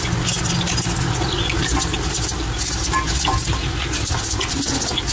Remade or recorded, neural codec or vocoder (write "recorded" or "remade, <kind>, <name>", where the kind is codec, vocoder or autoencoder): recorded